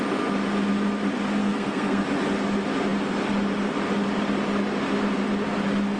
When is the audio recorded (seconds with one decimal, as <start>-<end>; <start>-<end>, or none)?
0.0-1.4; 2.0-6.0